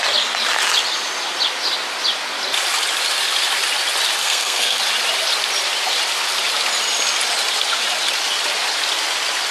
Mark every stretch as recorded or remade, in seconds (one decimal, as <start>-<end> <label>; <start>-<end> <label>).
0.0-4.2 recorded; 4.2-4.8 remade; 4.8-9.5 recorded